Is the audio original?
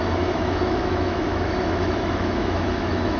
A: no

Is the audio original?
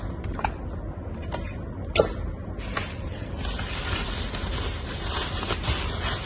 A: yes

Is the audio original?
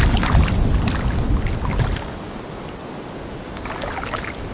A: yes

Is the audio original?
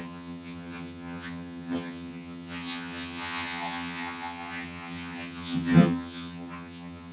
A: no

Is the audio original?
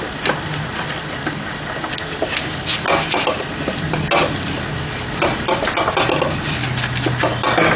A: yes